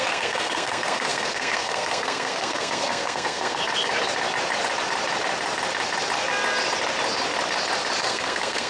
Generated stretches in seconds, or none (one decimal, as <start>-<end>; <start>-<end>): 0.0-3.6; 8.0-8.7